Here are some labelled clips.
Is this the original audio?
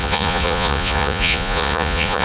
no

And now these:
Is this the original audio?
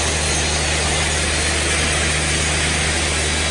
yes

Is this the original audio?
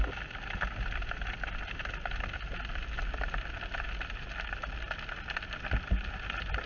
yes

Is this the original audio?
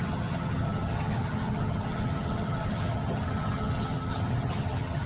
no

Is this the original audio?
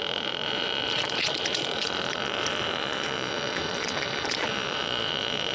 no